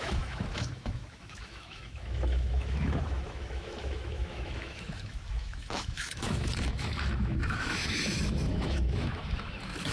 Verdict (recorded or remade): remade